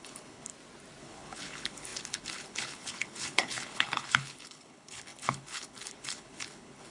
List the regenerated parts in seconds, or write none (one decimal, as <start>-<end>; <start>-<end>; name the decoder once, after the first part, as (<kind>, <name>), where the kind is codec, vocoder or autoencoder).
0.0-0.5 (codec, HILCodec); 1.0-6.9